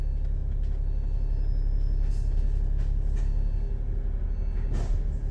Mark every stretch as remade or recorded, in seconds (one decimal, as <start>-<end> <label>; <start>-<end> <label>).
0.0-5.3 recorded